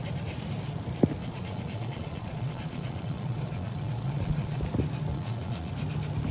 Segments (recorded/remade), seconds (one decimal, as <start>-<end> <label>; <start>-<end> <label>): 0.0-1.2 recorded; 1.2-4.6 remade; 4.6-5.1 recorded; 5.1-5.7 remade; 5.7-6.3 recorded